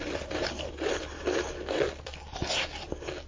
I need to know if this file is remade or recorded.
recorded